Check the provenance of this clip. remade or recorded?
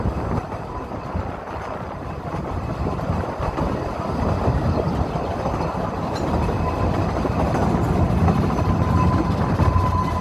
recorded